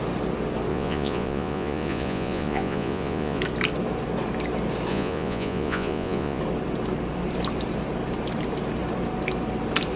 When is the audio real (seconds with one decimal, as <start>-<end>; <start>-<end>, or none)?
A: 0.0-0.7; 3.4-4.9; 6.4-10.0